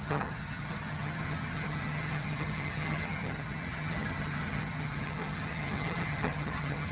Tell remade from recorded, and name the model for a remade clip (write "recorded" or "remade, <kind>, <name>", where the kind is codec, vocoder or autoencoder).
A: remade, vocoder, HiFi-GAN